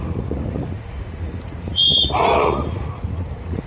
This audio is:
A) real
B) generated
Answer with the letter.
B